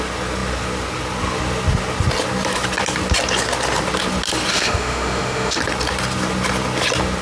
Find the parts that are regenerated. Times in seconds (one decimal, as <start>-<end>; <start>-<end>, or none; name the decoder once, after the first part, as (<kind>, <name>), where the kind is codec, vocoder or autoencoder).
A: 4.5-5.6 (autoencoder, DAC-VAE)